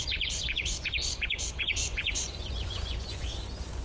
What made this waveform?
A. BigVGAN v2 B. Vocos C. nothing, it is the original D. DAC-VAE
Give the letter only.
B